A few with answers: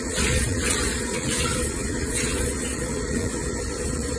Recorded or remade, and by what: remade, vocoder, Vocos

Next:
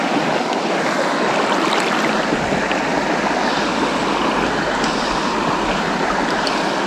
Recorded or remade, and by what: recorded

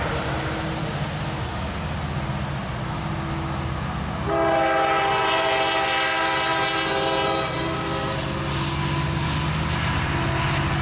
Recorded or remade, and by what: recorded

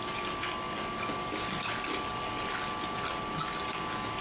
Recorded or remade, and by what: recorded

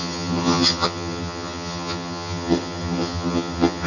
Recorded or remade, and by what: remade, vocoder, HiFi-GAN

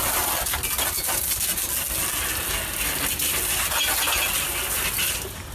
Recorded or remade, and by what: recorded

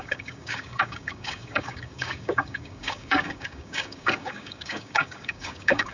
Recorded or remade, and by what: remade, codec, DAC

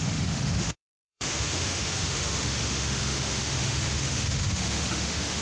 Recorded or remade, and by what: remade, autoencoder, DAC-VAE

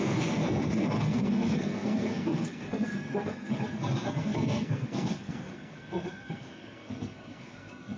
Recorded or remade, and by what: remade, codec, SNAC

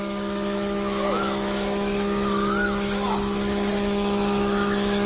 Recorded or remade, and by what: remade, autoencoder, DAC-VAE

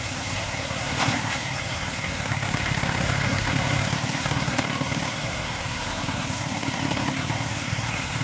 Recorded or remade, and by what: remade, codec, SNAC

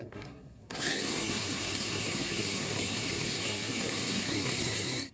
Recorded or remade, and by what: remade, codec, SNAC